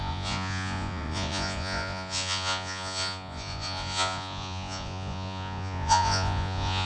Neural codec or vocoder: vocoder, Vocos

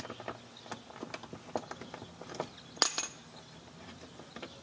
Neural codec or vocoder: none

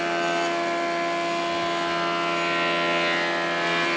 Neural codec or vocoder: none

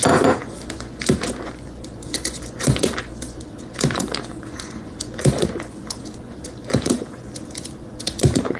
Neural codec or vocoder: vocoder, Vocos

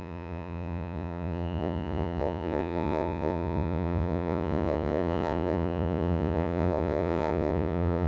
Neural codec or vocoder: vocoder, Vocos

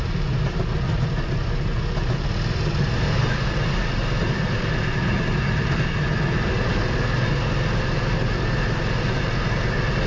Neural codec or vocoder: none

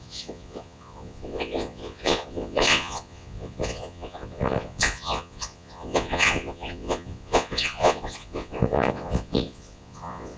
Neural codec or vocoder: vocoder, Vocos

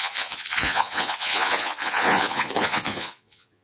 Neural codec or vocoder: vocoder, Vocos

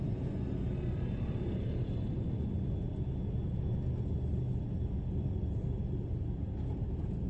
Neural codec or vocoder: none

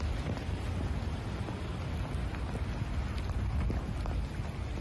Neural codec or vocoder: none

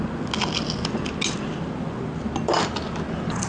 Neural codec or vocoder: none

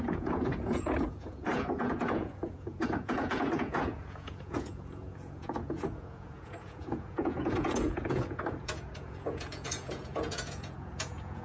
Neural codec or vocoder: vocoder, Vocos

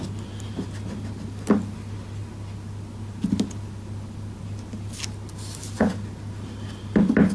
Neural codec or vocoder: none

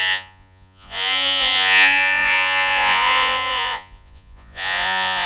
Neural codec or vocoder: vocoder, Vocos